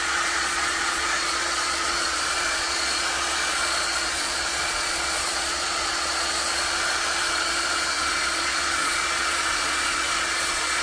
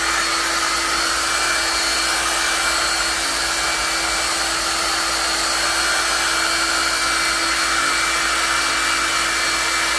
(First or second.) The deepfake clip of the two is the first